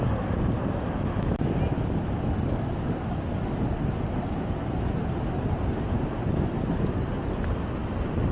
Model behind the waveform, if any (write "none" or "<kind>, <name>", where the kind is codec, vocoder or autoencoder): none